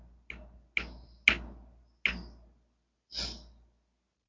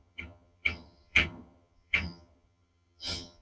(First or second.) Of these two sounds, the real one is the first